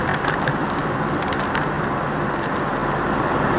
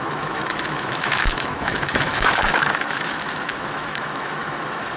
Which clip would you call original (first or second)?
first